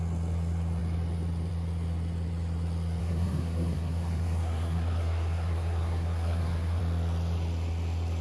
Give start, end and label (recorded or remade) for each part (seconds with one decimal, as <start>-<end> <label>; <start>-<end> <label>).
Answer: 0.0-3.0 recorded; 3.0-6.8 remade; 6.8-8.2 recorded